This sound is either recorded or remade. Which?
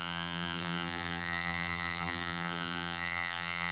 remade